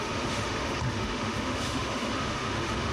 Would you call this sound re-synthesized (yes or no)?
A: yes